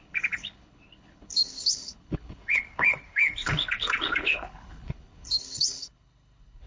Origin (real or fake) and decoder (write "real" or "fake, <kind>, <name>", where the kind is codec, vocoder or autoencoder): fake, codec, HILCodec